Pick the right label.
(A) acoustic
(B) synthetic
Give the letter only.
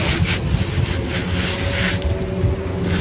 A